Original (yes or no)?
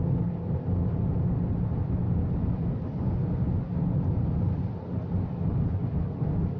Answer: yes